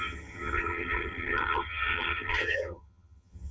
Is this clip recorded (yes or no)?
no